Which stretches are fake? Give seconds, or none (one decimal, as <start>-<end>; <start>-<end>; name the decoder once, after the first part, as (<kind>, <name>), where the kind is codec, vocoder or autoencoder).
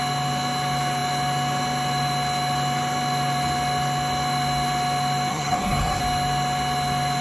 5.3-6.0 (codec, SNAC)